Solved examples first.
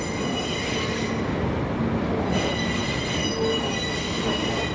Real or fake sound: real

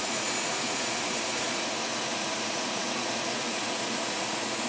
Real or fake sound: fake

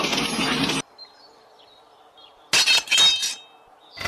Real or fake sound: real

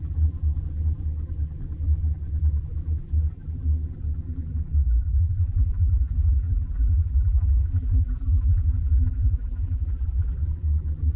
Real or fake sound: fake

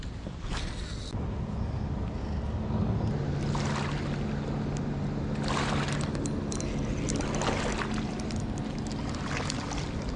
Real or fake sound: real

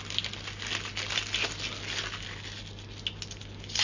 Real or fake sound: real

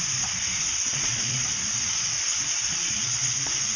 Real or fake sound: fake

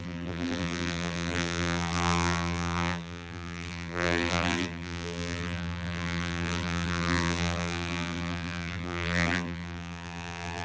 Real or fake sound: fake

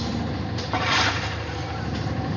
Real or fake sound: fake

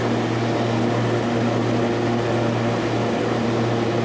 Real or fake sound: real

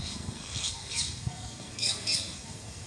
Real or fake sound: fake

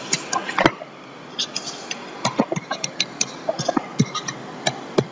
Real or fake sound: real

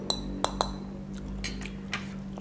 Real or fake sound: real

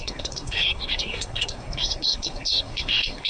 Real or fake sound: fake